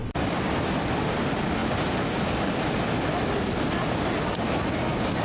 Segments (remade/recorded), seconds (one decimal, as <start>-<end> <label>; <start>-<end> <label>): 0.0-5.2 recorded